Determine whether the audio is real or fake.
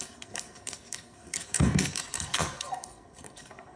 fake